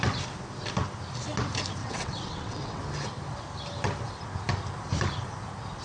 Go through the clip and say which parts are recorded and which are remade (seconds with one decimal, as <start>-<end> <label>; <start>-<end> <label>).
0.0-1.8 recorded; 1.8-2.8 remade; 2.8-5.8 recorded